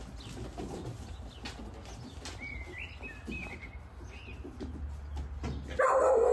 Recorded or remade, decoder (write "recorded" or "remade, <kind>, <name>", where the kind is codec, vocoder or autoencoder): recorded